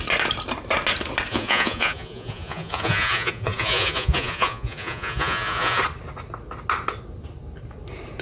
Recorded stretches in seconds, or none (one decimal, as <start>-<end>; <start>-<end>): 0.0-1.3; 5.8-8.2